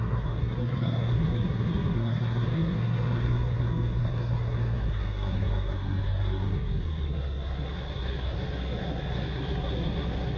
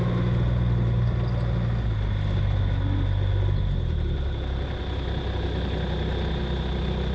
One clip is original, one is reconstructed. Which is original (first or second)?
second